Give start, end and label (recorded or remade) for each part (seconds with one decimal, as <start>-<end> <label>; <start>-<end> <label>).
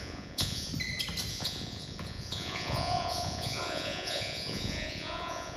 0.0-0.7 remade; 0.7-1.3 recorded; 1.3-5.6 remade